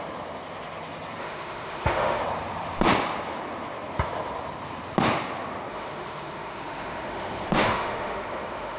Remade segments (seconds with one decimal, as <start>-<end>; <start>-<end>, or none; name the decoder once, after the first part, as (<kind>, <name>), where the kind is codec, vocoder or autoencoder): 1.2-2.2 (autoencoder, DAC-VAE); 5.7-8.8